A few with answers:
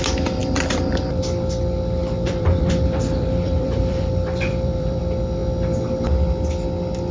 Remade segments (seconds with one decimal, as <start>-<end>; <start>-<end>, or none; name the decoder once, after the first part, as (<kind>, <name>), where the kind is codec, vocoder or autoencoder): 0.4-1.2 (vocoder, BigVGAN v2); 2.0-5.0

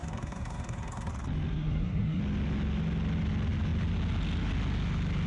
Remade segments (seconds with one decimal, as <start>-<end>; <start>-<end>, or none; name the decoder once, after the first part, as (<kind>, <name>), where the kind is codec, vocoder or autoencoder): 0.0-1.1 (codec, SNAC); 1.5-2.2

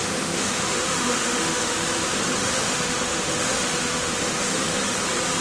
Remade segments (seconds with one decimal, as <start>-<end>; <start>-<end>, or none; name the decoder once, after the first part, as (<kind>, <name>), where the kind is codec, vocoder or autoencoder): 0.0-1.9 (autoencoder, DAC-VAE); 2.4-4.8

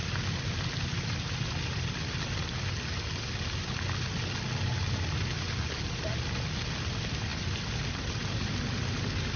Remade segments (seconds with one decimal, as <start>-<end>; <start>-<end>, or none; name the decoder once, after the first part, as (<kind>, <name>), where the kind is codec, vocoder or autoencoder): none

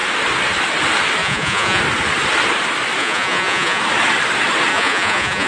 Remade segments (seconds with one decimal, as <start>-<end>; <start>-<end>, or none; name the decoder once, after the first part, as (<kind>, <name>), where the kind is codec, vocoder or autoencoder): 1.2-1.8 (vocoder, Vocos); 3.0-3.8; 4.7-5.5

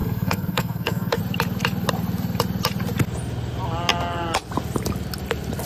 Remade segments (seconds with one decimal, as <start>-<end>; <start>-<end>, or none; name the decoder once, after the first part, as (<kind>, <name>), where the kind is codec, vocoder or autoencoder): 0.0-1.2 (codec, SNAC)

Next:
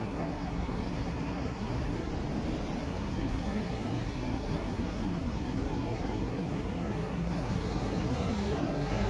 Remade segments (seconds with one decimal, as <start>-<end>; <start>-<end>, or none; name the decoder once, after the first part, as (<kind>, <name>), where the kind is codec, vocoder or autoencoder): 0.0-2.1 (codec, SNAC); 2.8-9.1